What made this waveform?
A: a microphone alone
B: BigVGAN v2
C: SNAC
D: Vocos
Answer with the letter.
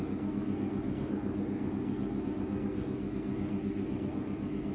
C